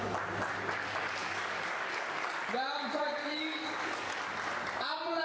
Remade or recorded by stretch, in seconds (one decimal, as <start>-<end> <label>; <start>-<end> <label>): 0.0-1.2 recorded; 1.2-2.5 remade; 2.5-3.2 recorded; 3.2-4.2 remade; 4.2-5.2 recorded